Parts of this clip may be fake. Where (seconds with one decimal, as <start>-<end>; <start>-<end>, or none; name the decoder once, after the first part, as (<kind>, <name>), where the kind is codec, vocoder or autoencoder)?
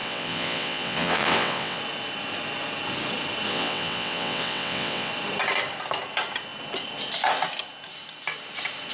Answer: 0.0-1.8 (vocoder, WaveNeXt); 3.5-5.1